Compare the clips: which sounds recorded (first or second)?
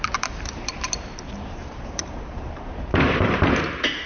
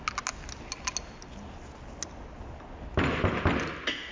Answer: second